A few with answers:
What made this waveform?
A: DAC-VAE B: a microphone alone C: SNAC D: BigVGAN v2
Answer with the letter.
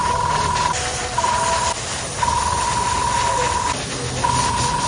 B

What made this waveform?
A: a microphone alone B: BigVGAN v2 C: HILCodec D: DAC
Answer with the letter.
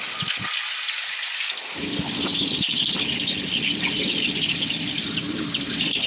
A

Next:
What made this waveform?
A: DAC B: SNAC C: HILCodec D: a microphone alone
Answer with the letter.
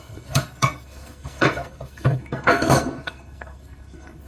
B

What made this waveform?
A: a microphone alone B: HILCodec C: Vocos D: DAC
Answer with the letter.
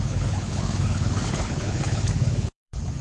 B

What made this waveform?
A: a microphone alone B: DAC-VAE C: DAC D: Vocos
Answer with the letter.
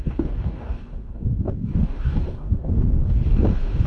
C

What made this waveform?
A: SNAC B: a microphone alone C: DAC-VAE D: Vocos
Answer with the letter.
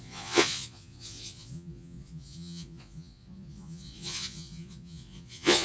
D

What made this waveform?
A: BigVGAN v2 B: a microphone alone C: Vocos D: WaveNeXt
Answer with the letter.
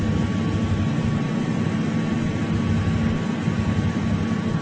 B